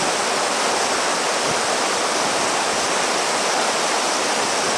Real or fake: real